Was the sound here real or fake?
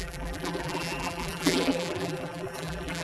fake